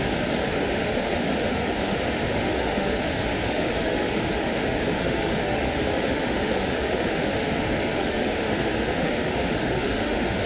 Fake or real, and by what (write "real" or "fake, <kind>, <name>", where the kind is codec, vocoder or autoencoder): fake, autoencoder, DAC-VAE